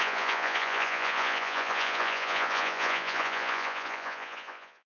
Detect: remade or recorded remade